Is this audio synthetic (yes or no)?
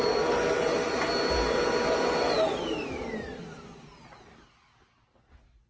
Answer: no